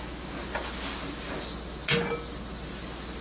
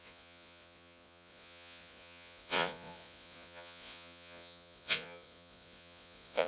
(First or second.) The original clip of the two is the first